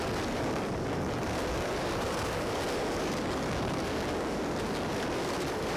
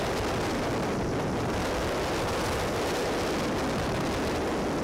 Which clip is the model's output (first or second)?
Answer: first